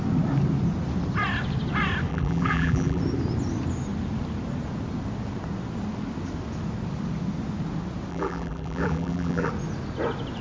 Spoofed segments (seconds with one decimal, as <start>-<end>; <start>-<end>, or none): 2.1-3.0; 8.1-9.5